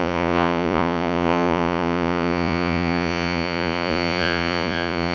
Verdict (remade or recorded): remade